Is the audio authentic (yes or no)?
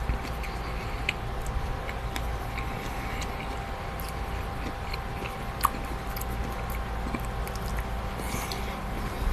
yes